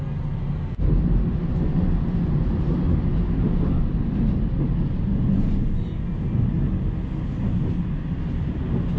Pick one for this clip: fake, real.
real